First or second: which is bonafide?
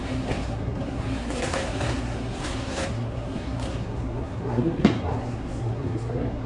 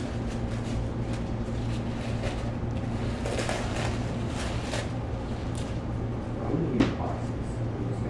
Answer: second